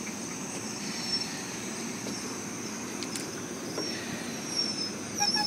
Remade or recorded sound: remade